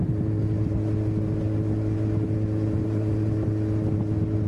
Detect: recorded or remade recorded